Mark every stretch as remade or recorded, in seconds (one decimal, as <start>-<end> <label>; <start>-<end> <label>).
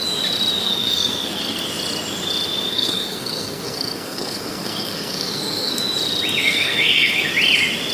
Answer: 0.0-0.6 recorded; 0.6-1.6 remade; 1.6-2.7 recorded; 2.7-5.8 remade; 5.8-6.4 recorded; 6.4-7.3 remade; 7.3-7.9 recorded